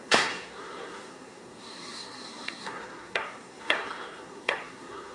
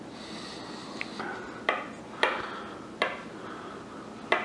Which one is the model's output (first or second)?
first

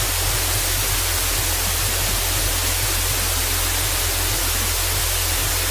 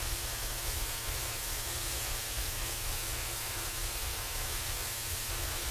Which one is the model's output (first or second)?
second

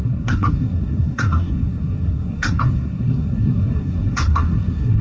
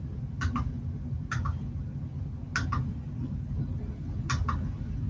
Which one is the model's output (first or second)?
first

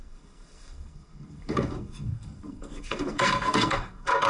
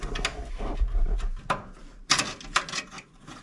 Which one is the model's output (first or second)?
first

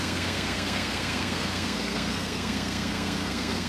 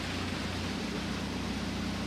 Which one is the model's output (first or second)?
first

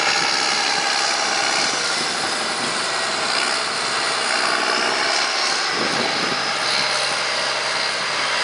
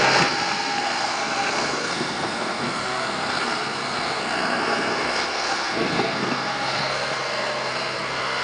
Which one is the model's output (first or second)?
second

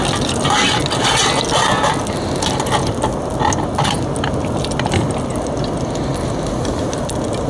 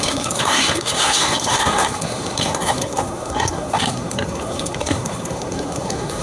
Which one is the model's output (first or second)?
second